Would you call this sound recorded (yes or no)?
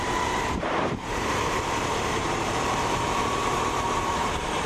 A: no